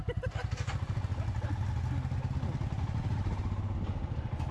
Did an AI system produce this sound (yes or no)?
no